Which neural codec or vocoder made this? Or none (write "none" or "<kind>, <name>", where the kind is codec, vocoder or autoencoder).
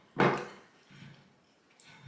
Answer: none